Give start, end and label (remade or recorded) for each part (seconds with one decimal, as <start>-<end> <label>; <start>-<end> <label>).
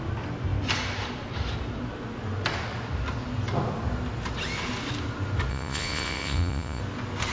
0.0-5.5 recorded; 5.5-6.8 remade; 6.8-7.3 recorded